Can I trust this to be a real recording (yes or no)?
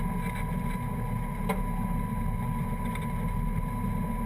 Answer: yes